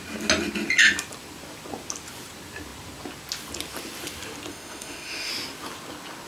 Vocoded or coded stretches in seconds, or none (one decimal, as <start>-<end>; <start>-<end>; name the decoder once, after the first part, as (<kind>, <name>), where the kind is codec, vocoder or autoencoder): 4.5-5.3 (autoencoder, DAC-VAE)